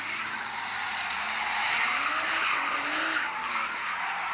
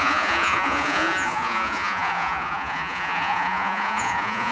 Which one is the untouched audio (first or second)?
first